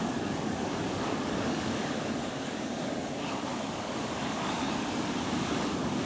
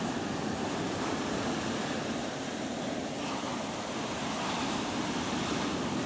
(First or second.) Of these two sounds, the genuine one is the second